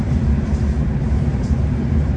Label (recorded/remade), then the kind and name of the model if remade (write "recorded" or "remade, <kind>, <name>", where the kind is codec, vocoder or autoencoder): remade, vocoder, BigVGAN v2